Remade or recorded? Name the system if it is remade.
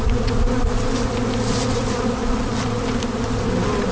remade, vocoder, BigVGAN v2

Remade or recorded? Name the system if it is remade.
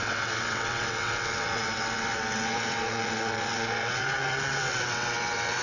remade, vocoder, WaveNeXt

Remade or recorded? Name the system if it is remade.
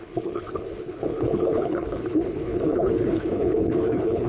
remade, codec, HILCodec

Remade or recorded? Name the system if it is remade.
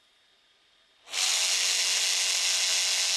recorded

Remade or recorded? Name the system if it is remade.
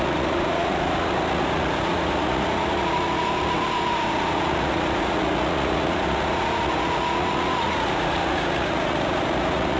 remade, vocoder, Vocos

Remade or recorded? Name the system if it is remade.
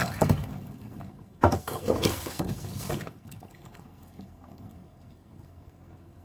remade, codec, SNAC